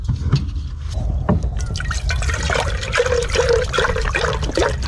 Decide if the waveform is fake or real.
real